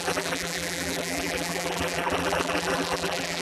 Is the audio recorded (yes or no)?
no